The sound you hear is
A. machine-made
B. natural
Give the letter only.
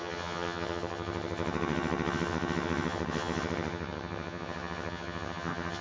A